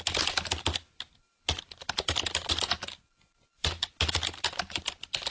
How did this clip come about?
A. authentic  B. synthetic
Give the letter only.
A